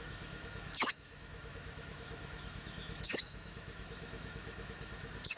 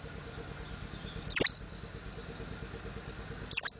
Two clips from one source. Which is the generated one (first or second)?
first